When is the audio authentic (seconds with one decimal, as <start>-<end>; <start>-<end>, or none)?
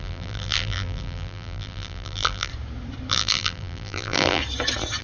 2.5-3.1; 4.4-5.0